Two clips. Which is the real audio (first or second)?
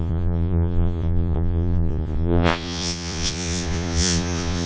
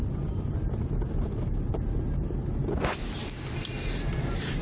second